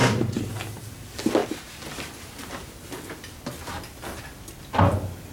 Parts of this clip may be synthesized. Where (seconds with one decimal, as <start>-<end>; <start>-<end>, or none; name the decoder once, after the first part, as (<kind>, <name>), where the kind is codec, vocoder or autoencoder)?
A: 0.0-0.5 (vocoder, BigVGAN v2)